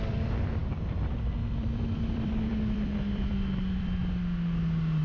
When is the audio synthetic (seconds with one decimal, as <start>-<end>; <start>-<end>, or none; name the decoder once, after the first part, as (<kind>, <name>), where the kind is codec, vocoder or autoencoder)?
0.0-4.0 (vocoder, BigVGAN v2)

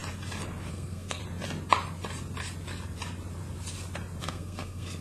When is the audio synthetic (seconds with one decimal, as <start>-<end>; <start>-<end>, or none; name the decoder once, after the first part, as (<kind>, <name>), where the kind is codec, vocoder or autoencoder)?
0.7-1.2 (codec, SNAC); 4.2-5.0

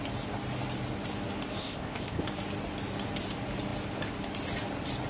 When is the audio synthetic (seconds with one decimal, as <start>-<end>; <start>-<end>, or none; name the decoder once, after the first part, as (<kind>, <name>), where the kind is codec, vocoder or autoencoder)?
1.6-2.2 (codec, ZipCodec)

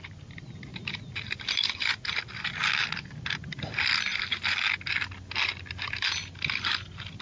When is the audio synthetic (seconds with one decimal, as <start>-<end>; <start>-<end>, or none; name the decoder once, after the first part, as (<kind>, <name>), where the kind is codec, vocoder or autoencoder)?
none

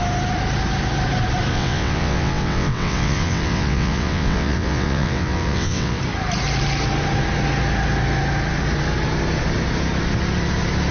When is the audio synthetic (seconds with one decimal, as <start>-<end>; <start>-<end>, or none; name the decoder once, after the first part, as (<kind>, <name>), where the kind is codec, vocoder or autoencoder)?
1.5-6.0 (vocoder, WaveNeXt)

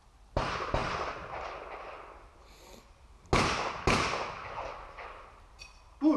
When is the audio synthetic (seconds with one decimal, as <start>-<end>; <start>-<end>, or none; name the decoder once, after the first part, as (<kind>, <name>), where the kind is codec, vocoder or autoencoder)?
none

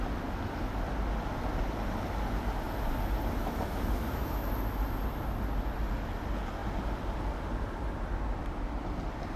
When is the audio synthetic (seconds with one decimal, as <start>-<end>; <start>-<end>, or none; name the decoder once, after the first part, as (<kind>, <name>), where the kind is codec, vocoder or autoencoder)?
3.4-4.5 (autoencoder, DAC-VAE)